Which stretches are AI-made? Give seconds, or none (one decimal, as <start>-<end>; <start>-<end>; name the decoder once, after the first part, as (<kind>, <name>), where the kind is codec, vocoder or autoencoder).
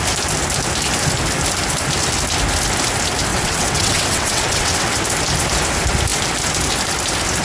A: 3.3-5.0 (vocoder, WaveNeXt)